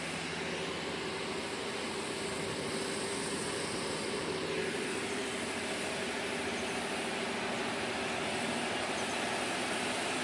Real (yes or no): yes